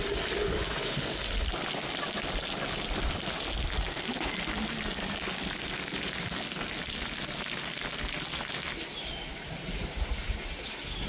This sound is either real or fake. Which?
real